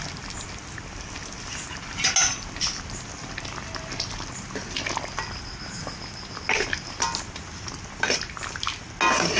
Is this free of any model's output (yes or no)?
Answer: yes